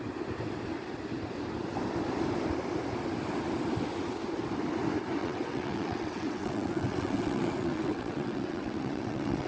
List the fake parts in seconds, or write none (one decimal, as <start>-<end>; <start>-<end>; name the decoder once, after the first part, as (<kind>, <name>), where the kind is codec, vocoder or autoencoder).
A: 5.2-9.5 (vocoder, WaveNeXt)